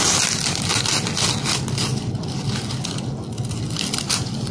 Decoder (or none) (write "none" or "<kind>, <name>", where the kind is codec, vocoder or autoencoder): none